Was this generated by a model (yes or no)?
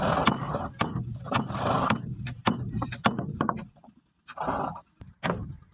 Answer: no